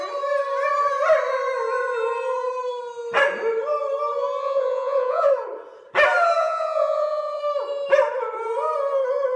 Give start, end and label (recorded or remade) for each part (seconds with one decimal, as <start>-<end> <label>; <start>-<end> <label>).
0.0-4.4 recorded; 4.4-5.3 remade; 5.3-6.4 recorded; 6.4-7.4 remade; 7.4-9.4 recorded